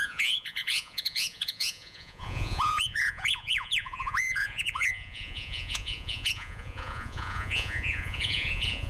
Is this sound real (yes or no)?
no